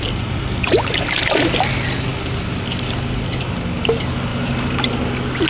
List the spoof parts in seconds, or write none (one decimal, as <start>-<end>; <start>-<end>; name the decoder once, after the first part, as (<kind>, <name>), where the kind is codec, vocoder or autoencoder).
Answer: none